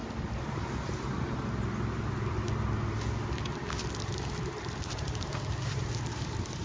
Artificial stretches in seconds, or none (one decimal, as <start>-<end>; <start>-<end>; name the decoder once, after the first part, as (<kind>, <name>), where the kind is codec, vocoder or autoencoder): 4.0-6.6 (vocoder, BigVGAN v2)